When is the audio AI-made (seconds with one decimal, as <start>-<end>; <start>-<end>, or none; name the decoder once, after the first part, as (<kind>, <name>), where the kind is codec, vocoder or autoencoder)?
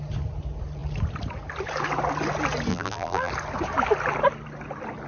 2.7-3.3 (vocoder, BigVGAN v2)